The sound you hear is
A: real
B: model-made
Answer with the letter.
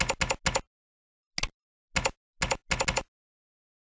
A